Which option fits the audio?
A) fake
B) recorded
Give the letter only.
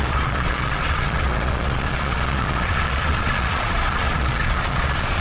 A